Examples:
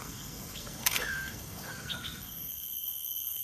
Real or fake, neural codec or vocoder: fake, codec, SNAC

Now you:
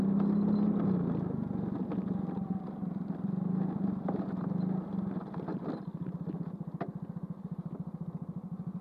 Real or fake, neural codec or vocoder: real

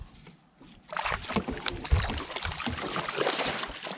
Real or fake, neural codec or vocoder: real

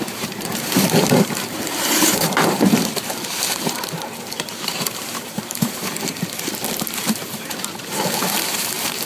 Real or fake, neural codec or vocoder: fake, vocoder, BigVGAN v2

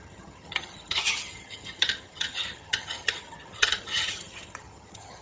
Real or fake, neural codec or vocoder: fake, vocoder, HiFi-GAN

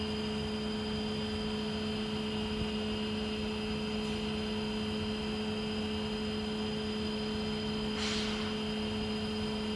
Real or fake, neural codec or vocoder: real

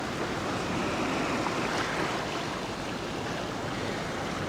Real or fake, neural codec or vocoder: real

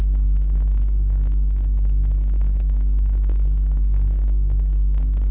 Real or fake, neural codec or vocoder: fake, codec, SNAC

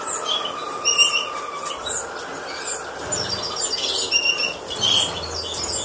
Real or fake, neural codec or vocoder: real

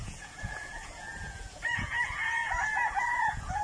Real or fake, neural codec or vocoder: fake, vocoder, Vocos